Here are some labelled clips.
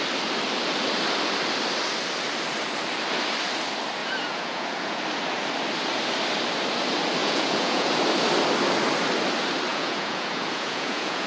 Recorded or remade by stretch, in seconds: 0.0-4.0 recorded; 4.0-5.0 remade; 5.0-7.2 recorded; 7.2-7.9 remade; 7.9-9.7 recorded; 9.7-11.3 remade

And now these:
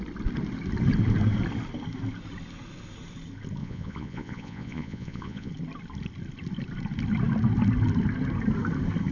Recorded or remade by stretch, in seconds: 0.0-3.6 recorded; 3.6-5.5 remade; 5.5-9.1 recorded

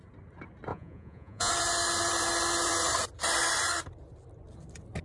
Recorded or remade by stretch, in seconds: 0.0-0.7 recorded; 0.7-1.5 remade; 1.5-5.0 recorded